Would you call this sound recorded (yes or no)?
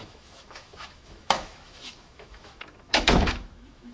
no